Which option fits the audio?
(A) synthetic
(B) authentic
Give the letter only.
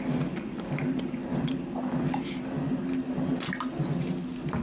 B